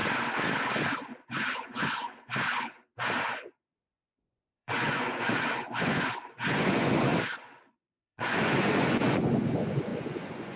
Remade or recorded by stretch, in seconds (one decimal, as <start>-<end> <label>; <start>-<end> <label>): 0.0-0.7 recorded; 0.7-2.9 remade; 2.9-3.6 recorded; 3.6-7.1 remade; 7.1-7.8 recorded; 7.8-10.6 remade